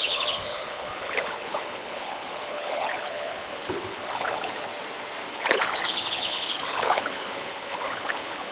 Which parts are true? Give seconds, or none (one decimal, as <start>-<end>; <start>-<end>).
4.7-5.3